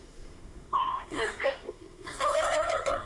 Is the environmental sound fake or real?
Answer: fake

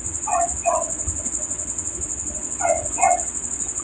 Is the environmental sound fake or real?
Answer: fake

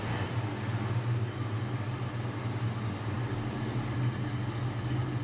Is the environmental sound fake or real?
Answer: real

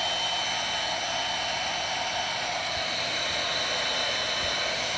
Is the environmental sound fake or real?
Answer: real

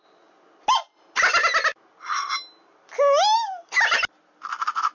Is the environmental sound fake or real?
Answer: real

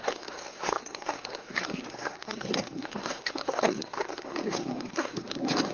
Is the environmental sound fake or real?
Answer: fake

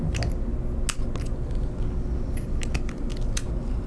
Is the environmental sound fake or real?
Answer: real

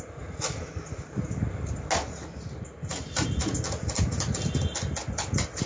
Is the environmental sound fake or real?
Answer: real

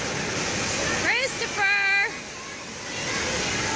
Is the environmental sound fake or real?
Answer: real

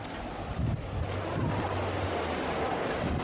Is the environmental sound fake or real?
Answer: real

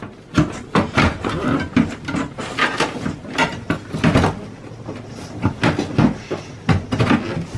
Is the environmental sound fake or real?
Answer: real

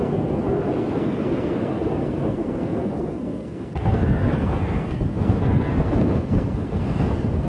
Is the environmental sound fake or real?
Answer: fake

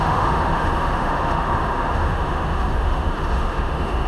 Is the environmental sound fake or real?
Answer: fake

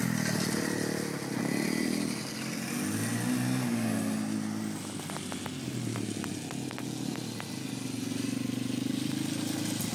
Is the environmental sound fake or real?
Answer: real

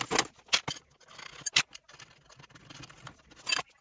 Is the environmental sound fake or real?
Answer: real